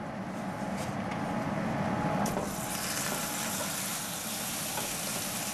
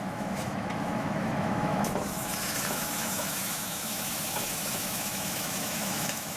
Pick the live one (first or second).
first